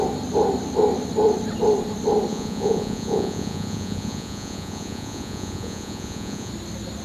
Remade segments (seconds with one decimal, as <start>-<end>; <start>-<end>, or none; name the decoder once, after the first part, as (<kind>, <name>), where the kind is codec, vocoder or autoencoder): 2.3-6.5 (vocoder, Vocos)